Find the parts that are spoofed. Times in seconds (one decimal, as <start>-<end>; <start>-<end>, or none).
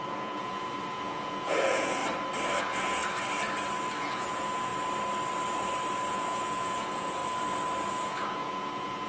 0.0-2.0; 2.6-3.0; 4.0-4.7; 6.1-7.2; 7.9-9.1